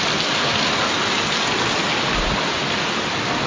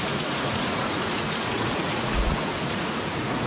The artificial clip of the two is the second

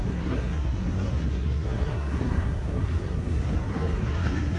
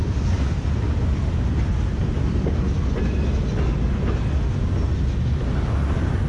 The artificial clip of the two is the first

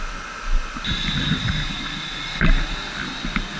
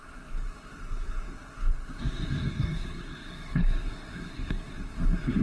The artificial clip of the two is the second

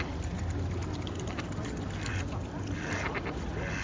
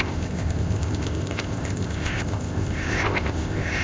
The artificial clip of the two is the second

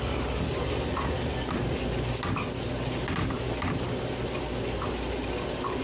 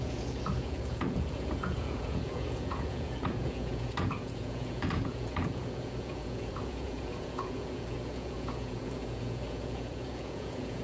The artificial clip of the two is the second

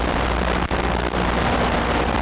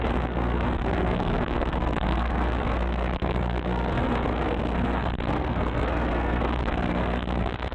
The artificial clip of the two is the second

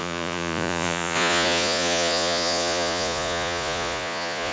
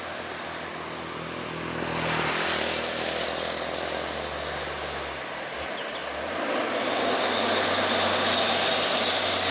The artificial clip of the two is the first